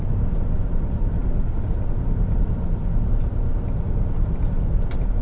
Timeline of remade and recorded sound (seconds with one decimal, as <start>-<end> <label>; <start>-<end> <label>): 0.0-5.2 remade